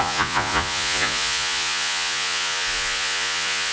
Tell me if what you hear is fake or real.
fake